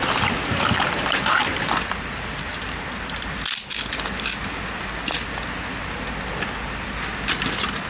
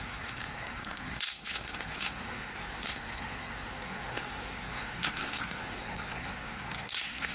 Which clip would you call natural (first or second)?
first